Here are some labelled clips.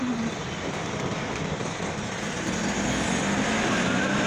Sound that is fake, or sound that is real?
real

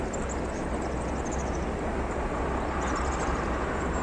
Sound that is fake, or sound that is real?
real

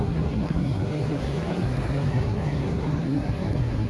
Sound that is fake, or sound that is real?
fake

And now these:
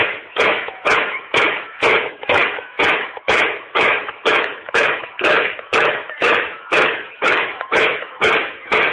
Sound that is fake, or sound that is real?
fake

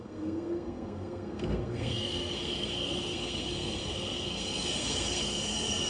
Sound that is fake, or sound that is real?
fake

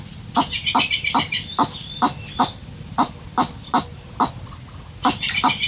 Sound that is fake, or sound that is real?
fake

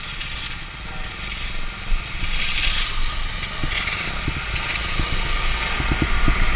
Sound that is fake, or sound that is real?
real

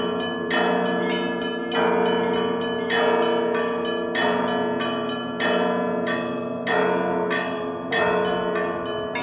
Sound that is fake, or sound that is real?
real